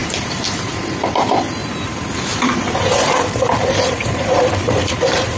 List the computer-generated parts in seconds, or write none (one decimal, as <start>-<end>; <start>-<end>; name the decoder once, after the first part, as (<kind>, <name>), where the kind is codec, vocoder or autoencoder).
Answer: 0.0-0.8 (vocoder, BigVGAN v2); 1.6-4.8